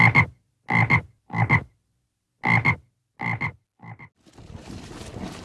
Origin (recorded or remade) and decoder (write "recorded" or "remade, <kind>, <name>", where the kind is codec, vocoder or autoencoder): recorded